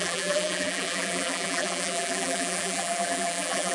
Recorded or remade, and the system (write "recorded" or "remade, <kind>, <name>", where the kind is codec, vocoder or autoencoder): remade, vocoder, BigVGAN v2